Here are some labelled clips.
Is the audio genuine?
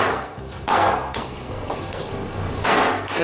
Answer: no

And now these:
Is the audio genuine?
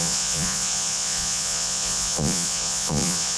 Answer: no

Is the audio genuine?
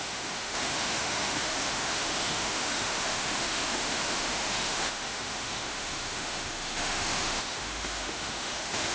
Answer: no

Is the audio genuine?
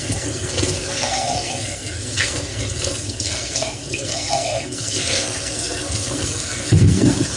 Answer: no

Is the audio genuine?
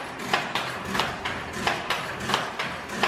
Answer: yes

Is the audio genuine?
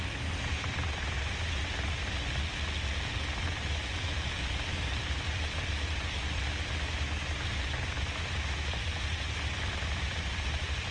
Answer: yes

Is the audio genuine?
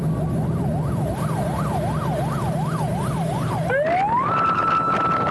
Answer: yes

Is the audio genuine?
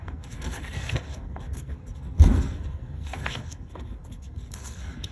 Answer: no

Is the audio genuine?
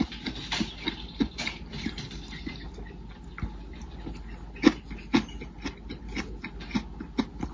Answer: yes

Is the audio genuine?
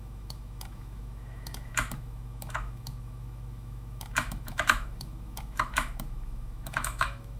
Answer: no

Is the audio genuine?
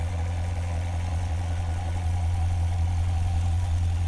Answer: no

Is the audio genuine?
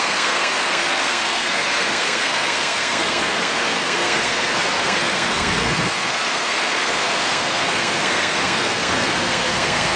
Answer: no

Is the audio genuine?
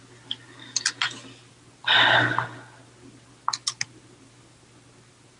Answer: yes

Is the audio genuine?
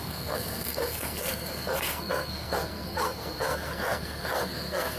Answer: no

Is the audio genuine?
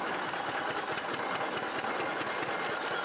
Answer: yes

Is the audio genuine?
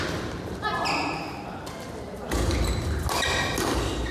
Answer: yes